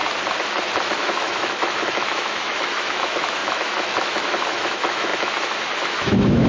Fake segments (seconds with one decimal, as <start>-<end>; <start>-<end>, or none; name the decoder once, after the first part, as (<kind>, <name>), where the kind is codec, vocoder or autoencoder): 0.9-6.5 (autoencoder, DAC-VAE)